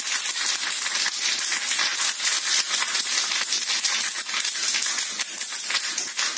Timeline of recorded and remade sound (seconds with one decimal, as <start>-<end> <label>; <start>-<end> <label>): 0.0-6.4 recorded